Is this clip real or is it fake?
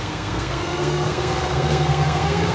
fake